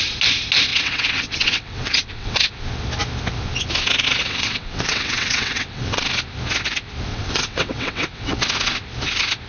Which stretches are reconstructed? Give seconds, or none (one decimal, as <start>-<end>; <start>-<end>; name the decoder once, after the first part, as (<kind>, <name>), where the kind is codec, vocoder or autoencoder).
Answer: 0.7-2.5 (vocoder, WaveNeXt); 4.2-6.0; 7.1-8.4